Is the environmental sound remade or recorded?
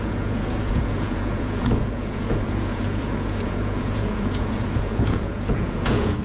remade